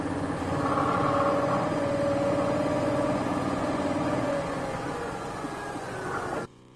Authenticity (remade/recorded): remade